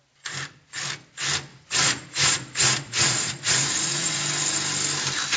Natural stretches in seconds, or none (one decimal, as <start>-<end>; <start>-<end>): 0.0-1.5; 4.2-5.4